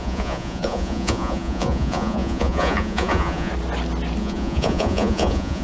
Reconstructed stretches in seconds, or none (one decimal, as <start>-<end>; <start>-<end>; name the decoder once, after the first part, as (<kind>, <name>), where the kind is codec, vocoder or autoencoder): 0.0-3.5 (vocoder, Vocos); 4.2-5.6